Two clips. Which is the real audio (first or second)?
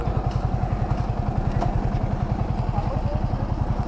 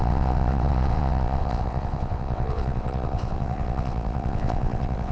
first